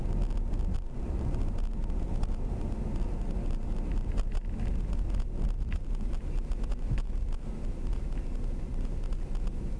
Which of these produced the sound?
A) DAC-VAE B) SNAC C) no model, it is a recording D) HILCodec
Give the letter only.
C